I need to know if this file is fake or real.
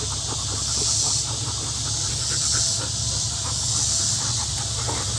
real